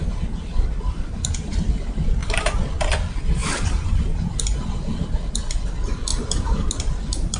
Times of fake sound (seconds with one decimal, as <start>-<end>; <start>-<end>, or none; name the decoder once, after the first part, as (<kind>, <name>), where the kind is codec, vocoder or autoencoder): 2.2-2.7 (vocoder, BigVGAN v2); 3.4-4.0; 6.1-6.7